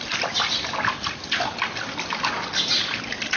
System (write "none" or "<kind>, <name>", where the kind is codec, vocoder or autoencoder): none